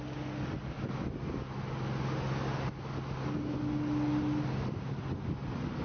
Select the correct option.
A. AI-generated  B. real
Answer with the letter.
B